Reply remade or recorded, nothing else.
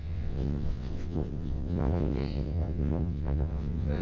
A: remade